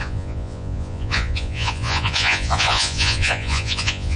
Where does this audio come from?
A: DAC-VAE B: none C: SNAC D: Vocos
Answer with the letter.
D